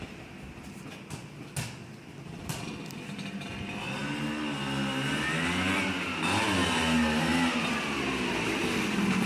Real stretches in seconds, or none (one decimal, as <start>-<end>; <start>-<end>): 0.0-9.3